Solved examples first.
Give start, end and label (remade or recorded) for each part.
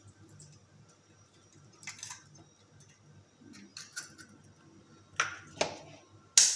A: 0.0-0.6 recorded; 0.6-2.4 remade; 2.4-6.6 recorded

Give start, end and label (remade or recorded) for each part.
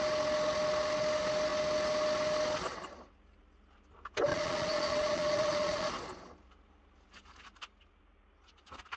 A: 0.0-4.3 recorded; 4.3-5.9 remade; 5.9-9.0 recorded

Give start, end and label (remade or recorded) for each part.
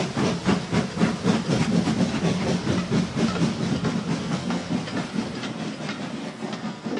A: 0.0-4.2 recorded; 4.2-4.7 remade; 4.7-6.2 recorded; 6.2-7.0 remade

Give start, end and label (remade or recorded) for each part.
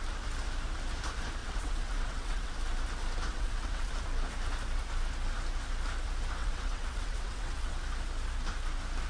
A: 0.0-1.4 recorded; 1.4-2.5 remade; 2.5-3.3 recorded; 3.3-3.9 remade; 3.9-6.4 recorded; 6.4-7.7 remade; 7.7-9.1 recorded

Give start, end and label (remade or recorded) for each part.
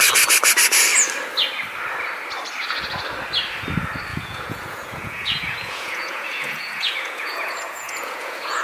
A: 0.0-4.1 recorded; 4.1-8.6 remade